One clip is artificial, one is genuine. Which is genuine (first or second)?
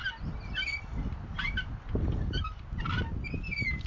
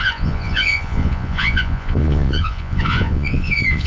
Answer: first